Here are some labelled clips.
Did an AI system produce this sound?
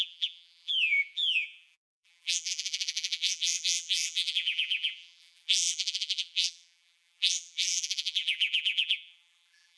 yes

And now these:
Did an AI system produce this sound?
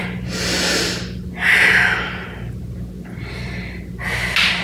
no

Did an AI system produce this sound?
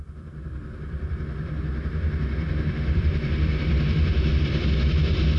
yes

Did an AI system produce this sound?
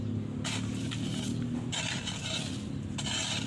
no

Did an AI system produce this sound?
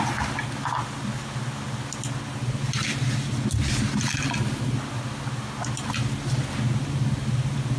no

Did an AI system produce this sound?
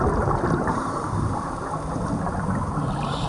yes